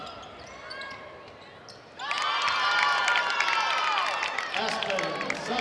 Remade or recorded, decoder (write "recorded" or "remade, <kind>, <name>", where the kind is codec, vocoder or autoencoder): recorded